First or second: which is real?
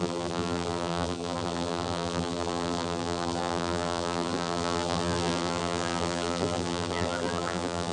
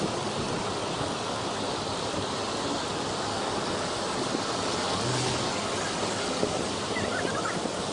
second